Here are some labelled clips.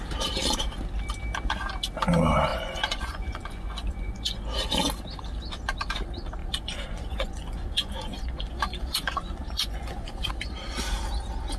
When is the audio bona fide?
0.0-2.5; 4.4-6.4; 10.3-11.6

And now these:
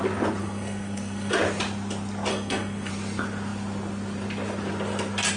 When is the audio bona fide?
0.0-0.4; 1.3-2.3; 2.9-5.4

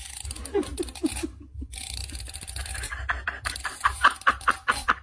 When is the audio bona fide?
0.0-5.0

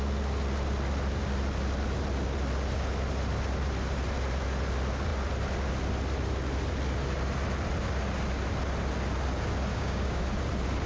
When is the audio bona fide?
0.0-9.7; 10.2-10.9

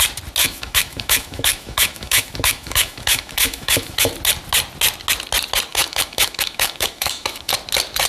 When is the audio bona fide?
0.0-0.4; 4.1-5.7; 7.5-8.1